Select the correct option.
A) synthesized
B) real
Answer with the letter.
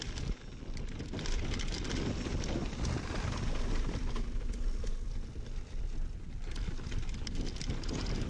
B